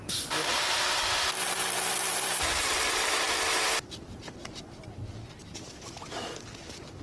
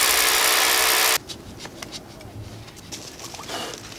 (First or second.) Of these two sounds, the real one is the second